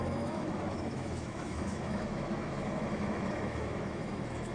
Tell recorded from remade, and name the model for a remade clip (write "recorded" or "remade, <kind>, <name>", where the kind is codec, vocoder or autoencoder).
remade, autoencoder, DAC-VAE